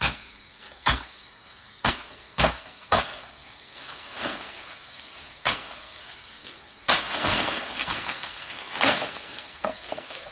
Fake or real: fake